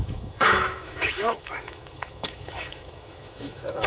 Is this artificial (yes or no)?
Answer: yes